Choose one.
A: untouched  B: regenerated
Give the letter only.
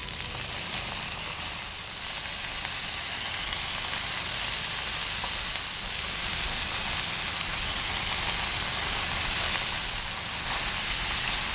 A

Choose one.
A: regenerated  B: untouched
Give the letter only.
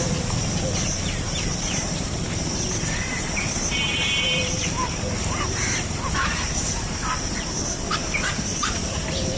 A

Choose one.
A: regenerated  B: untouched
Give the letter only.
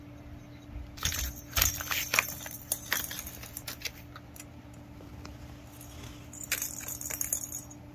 B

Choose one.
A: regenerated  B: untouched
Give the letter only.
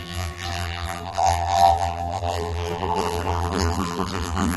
A